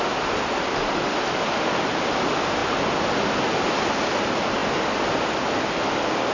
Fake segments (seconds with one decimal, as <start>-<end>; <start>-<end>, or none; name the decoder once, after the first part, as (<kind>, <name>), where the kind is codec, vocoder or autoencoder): none